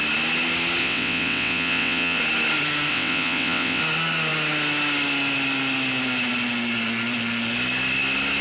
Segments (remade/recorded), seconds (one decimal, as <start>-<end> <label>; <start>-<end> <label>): 0.0-0.8 recorded; 0.8-2.2 remade; 2.2-2.9 recorded; 2.9-3.8 remade; 3.8-8.4 recorded